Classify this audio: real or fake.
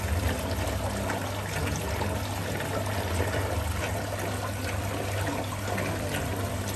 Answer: real